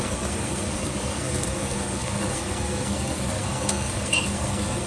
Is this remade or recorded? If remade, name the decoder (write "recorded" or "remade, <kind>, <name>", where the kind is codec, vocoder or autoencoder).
remade, codec, SNAC